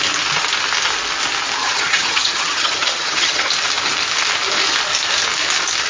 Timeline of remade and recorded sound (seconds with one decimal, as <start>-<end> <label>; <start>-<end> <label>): 0.0-1.6 recorded; 1.6-3.5 remade; 3.5-5.9 recorded